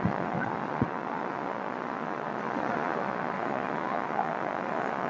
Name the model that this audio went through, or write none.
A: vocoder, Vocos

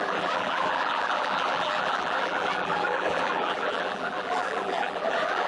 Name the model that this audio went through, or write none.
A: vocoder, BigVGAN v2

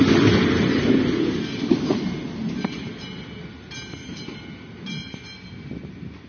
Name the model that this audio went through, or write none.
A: none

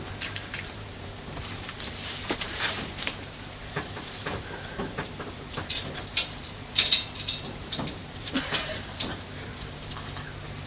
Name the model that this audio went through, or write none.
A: vocoder, BigVGAN v2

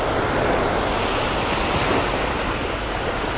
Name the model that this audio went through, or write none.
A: none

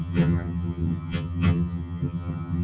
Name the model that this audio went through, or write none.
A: vocoder, HiFi-GAN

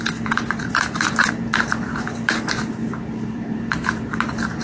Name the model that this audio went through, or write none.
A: vocoder, BigVGAN v2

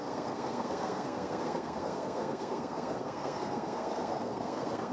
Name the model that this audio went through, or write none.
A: codec, SNAC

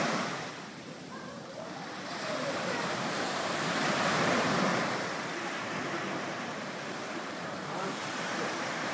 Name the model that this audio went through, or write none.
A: vocoder, BigVGAN v2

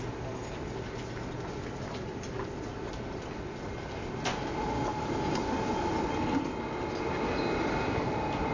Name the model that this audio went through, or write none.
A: none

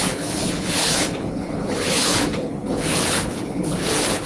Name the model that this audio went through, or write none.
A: codec, HILCodec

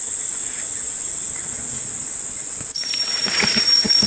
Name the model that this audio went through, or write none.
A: vocoder, Vocos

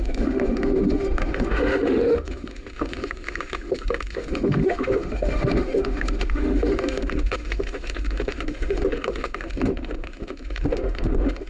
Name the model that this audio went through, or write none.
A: autoencoder, DAC-VAE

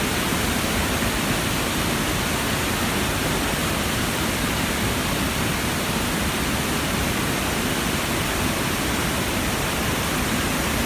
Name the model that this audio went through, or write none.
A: none